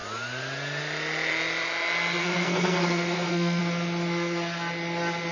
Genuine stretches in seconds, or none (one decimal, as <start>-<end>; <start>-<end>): 0.0-2.2; 3.6-5.3